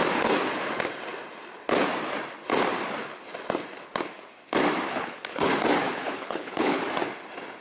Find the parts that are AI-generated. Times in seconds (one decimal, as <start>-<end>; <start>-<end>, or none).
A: 4.9-5.5; 5.9-6.8